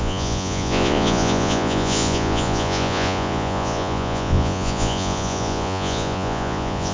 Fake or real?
fake